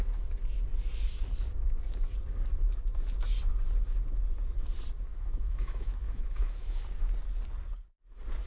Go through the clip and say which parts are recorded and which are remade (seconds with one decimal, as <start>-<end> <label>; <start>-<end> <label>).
0.0-5.1 recorded; 5.1-6.8 remade; 6.8-8.5 recorded